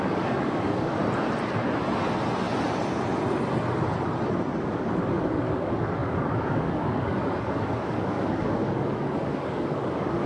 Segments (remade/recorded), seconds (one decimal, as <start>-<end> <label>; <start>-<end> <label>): 0.0-1.0 remade; 1.0-4.6 recorded; 4.6-10.3 remade